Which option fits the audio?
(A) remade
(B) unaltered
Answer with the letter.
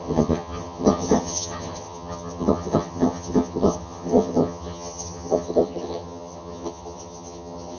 A